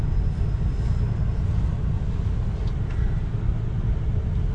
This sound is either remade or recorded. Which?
recorded